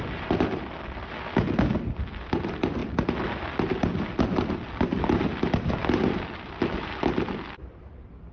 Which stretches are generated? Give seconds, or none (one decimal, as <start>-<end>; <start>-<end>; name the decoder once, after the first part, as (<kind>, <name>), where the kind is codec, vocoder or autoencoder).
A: 0.0-1.0 (vocoder, BigVGAN v2); 2.0-2.8; 4.8-5.8; 6.8-8.3

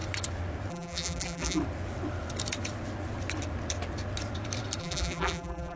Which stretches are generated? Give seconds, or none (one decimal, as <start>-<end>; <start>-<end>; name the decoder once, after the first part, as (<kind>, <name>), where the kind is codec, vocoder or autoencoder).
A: 0.7-1.6 (vocoder, BigVGAN v2); 4.8-5.8

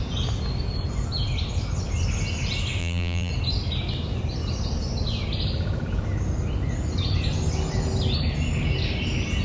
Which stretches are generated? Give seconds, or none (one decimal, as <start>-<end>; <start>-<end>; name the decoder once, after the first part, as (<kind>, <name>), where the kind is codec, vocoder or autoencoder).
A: 2.8-3.3 (vocoder, BigVGAN v2)

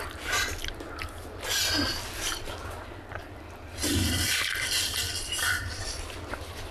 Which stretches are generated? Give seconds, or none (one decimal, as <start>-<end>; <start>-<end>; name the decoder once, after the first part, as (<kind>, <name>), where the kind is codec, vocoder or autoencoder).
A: 1.6-5.6 (vocoder, BigVGAN v2)

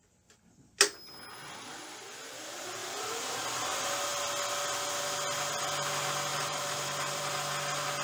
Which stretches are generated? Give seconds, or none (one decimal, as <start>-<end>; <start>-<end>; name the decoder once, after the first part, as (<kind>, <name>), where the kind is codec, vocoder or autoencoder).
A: 2.8-3.4 (vocoder, BigVGAN v2); 6.3-7.2

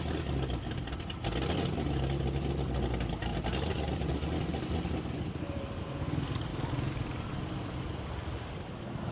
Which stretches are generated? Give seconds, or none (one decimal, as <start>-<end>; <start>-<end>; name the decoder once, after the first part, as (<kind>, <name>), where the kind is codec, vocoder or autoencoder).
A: 3.3-5.8 (vocoder, BigVGAN v2); 6.5-7.6